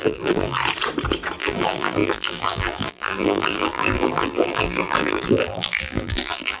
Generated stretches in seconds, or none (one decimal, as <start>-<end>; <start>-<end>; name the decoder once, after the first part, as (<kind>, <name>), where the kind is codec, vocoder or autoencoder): 0.0-0.6 (vocoder, BigVGAN v2); 1.4-6.6